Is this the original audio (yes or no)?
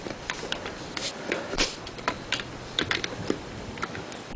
no